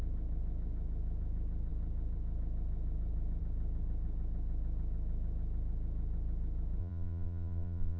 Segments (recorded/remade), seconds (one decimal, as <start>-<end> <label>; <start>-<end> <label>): 0.0-6.8 recorded; 6.8-8.0 remade